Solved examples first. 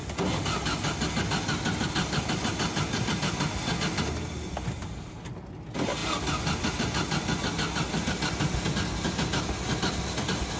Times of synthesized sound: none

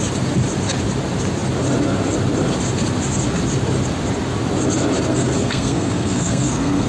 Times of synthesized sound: 5.1-6.9 (codec, SNAC)

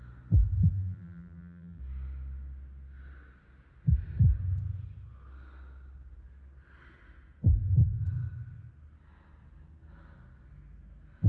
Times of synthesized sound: 0.7-1.8 (vocoder, BigVGAN v2)

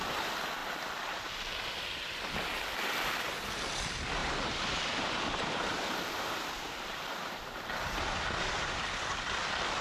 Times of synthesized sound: 4.2-7.1 (vocoder, BigVGAN v2)

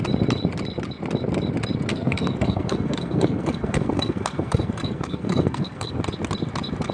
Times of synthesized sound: 1.9-6.0 (codec, SNAC)

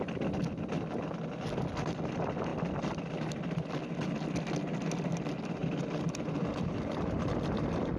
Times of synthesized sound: 2.5-3.7 (vocoder, BigVGAN v2); 5.6-6.4